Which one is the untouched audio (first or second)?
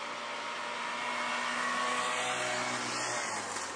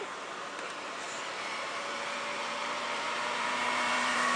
first